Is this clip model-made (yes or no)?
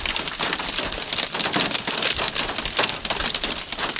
no